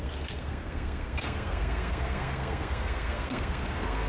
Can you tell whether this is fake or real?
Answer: fake